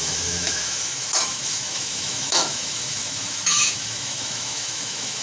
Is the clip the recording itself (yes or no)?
no